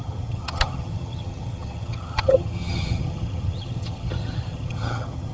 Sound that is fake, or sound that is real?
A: fake